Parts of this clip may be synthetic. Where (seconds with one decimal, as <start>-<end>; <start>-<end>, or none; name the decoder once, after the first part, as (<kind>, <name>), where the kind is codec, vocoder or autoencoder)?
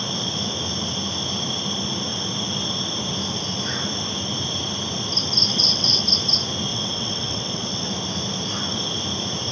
5.5-6.0 (vocoder, WaveNeXt); 6.7-7.9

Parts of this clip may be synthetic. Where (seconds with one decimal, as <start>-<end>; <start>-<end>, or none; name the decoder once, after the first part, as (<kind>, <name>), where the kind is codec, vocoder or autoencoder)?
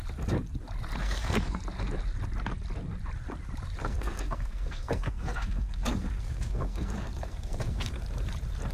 1.0-1.6 (codec, SNAC); 3.8-8.0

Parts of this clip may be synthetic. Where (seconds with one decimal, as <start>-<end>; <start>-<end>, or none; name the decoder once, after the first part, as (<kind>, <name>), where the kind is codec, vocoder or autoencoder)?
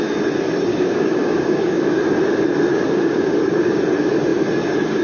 0.7-2.0 (codec, DAC); 2.7-3.8